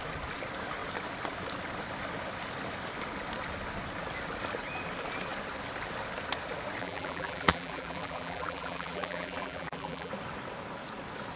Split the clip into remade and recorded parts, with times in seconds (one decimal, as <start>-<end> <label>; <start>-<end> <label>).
0.0-6.8 recorded; 6.8-10.1 remade; 10.1-11.4 recorded